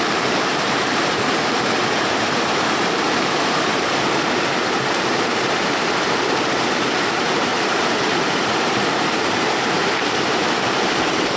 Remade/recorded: remade